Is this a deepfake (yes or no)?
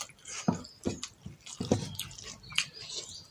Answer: no